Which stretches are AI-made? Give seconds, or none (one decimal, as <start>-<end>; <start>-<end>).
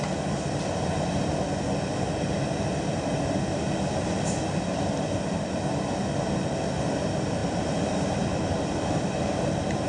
7.4-9.1